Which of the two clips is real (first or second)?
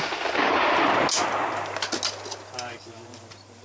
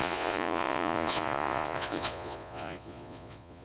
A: first